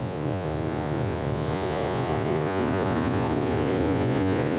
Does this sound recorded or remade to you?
remade